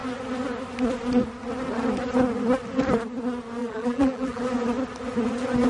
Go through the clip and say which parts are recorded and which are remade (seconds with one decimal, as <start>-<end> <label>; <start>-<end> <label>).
0.0-3.6 recorded; 3.6-4.4 remade; 4.4-5.7 recorded